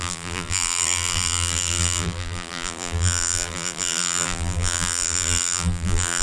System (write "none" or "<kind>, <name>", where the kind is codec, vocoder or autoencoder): vocoder, BigVGAN v2